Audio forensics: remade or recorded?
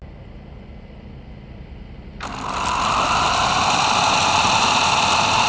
recorded